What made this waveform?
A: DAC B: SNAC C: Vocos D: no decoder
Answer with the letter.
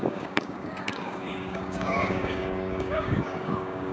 A